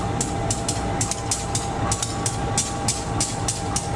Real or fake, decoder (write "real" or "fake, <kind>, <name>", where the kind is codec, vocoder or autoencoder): real